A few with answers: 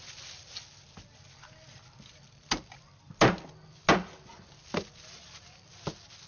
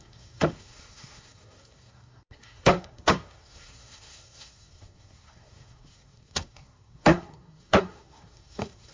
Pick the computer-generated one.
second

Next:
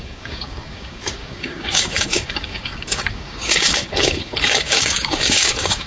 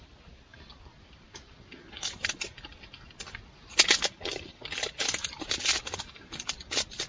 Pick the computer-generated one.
first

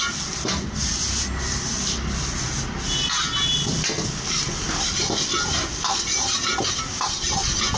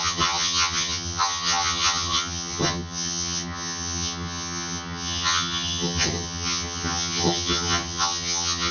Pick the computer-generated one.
second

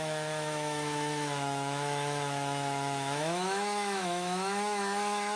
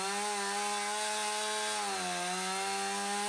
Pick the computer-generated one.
first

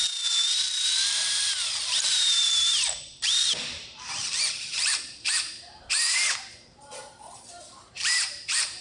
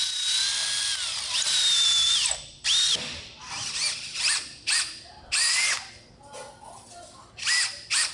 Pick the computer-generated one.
first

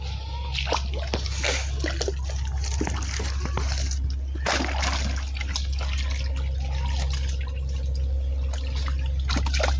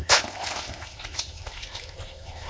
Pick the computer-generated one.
second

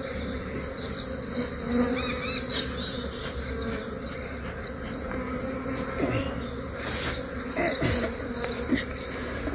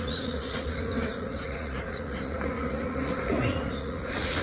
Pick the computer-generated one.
second